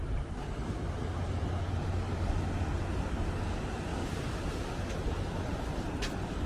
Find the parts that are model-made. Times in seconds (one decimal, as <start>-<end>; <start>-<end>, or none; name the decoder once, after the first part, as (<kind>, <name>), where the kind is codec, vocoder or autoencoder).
none